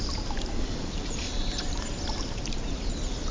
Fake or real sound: real